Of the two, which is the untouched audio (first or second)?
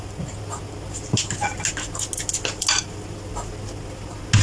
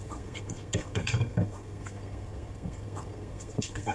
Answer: first